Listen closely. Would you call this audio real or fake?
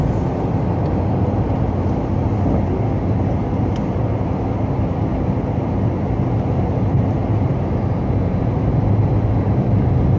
real